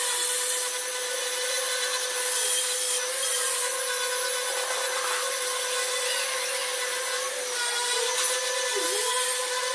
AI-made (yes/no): no